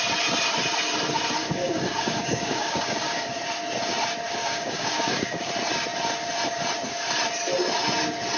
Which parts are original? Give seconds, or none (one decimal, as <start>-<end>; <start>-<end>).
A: 0.0-1.4; 3.4-4.4; 5.5-8.4